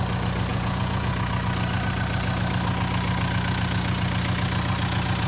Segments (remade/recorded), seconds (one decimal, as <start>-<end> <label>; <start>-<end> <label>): 0.0-0.5 recorded; 0.5-1.1 remade; 1.1-5.3 recorded